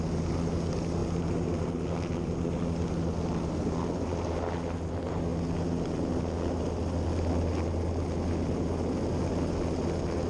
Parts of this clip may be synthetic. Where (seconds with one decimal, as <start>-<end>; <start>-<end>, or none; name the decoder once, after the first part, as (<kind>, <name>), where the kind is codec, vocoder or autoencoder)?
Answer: none